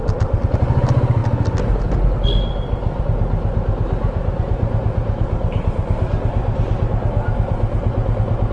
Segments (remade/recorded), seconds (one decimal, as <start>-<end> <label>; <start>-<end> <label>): 0.0-8.5 recorded